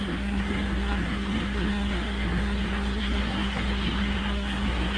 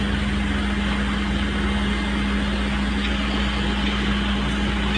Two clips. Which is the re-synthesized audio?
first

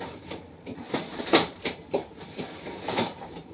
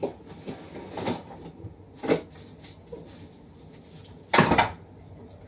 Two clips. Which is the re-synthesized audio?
first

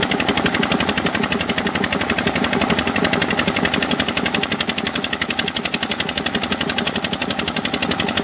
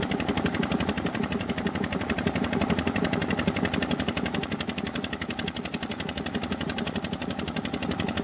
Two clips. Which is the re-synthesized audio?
second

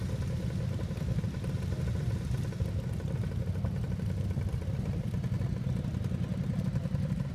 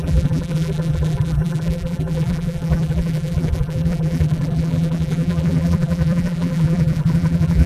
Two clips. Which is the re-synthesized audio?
second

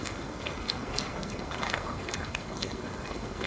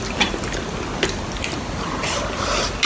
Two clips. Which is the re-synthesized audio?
first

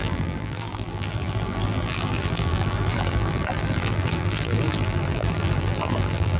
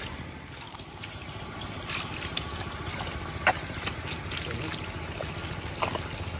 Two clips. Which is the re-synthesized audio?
first